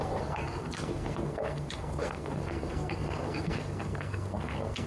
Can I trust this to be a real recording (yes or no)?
no